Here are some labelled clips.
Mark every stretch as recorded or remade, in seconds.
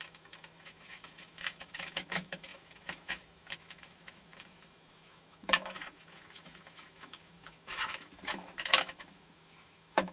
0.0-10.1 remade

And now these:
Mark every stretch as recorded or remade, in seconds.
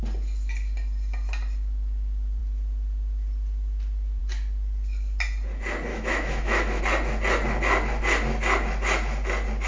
0.0-5.9 recorded; 5.9-6.8 remade; 6.8-9.7 recorded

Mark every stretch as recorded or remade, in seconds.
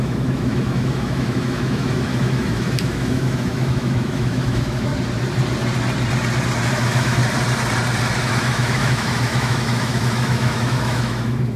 0.0-4.9 remade; 4.9-6.7 recorded; 6.7-7.2 remade; 7.2-8.2 recorded; 8.2-11.6 remade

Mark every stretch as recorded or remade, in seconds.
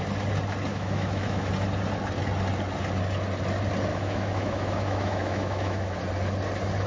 0.0-0.7 recorded; 0.7-1.5 remade; 1.5-3.9 recorded; 3.9-6.0 remade; 6.0-6.9 recorded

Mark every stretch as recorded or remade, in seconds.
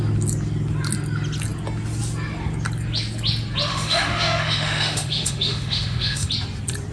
0.0-3.7 recorded; 3.7-6.3 remade; 6.3-6.9 recorded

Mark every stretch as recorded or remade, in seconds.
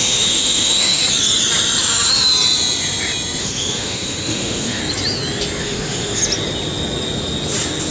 0.0-1.0 remade; 1.0-3.4 recorded; 3.4-4.8 remade; 4.8-5.6 recorded; 5.6-6.2 remade; 6.2-7.9 recorded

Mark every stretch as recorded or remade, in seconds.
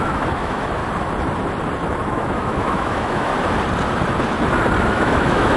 0.0-0.8 remade; 0.8-2.1 recorded; 2.1-3.3 remade; 3.3-4.8 recorded; 4.8-5.6 remade